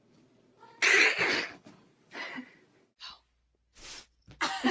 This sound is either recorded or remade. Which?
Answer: recorded